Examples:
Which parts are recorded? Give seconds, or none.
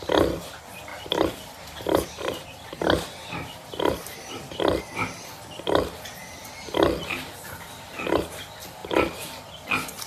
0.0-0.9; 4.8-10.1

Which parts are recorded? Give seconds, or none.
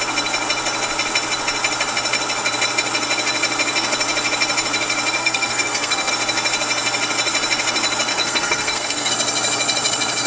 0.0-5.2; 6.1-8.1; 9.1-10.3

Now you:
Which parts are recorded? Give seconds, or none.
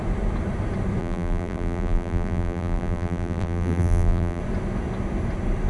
0.0-1.0; 4.4-5.7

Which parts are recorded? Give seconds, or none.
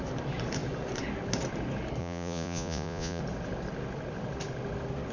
0.0-2.0; 3.2-5.1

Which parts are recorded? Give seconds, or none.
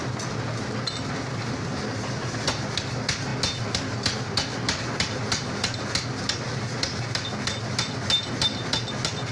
0.0-9.3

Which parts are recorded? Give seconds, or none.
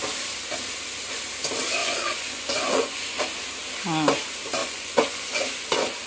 0.0-1.8; 3.2-4.6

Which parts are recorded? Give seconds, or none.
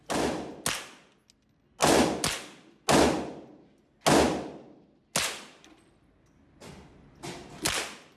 0.0-8.2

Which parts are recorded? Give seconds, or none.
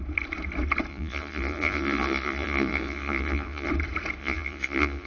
0.0-0.9; 3.7-4.2